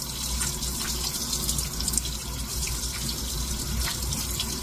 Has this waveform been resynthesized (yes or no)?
no